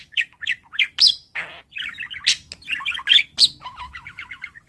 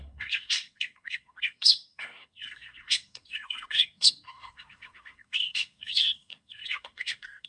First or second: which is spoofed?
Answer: second